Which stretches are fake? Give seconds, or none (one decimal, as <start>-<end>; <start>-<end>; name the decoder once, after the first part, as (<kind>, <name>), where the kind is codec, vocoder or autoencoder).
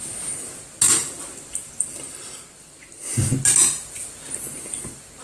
1.0-2.5 (vocoder, BigVGAN v2)